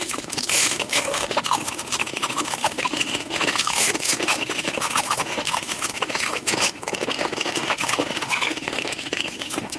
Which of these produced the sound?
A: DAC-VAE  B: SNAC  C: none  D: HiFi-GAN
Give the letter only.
A